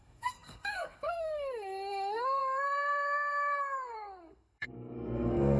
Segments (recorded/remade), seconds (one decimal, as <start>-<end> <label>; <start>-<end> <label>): 0.0-5.6 remade